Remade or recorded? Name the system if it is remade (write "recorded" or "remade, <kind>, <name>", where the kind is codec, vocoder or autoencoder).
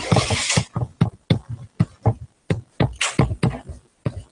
recorded